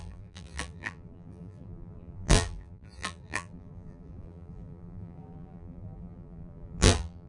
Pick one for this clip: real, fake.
fake